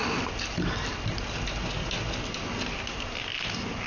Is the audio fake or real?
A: real